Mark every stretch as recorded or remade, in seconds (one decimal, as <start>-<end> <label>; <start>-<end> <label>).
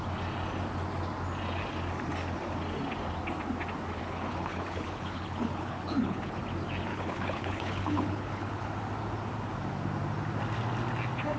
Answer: 0.0-4.0 recorded; 4.0-6.4 remade; 6.4-6.9 recorded; 6.9-8.7 remade; 8.7-11.4 recorded